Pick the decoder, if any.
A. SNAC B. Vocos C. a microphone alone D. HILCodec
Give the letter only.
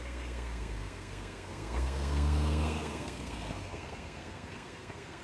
A